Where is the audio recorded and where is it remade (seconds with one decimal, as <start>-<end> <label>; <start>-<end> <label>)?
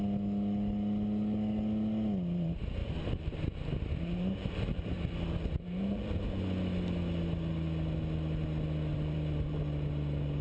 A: 0.0-2.8 recorded; 2.8-6.2 remade; 6.2-8.9 recorded; 8.9-9.6 remade; 9.6-10.4 recorded